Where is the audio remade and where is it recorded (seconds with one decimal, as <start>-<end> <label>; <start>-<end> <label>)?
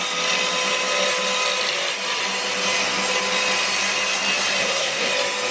0.0-4.6 recorded; 4.6-5.1 remade; 5.1-5.5 recorded